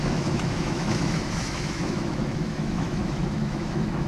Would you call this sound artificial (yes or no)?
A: yes